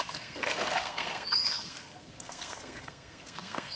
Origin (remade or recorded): remade